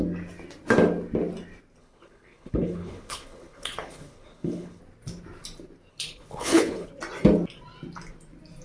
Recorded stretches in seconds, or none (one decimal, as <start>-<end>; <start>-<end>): 0.0-1.8; 4.8-5.9; 6.9-8.6